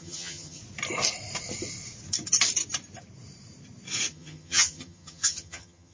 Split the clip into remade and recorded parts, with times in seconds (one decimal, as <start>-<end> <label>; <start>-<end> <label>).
0.0-0.6 remade; 0.6-4.1 recorded; 4.1-5.9 remade